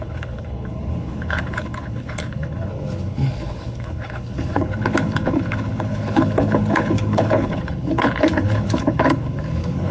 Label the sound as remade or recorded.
remade